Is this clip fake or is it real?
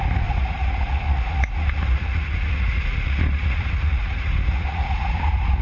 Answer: fake